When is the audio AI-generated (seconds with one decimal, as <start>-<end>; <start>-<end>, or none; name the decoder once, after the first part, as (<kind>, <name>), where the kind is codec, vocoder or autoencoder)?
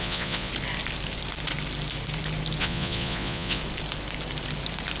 0.0-0.5 (vocoder, Vocos); 2.6-3.6